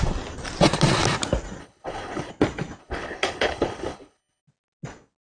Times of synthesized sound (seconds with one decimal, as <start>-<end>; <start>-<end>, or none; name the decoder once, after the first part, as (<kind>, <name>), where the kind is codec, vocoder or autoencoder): 1.6-2.3 (codec, HILCodec); 2.8-4.4